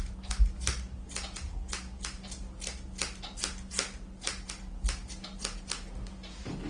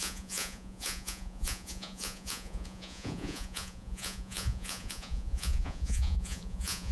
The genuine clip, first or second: first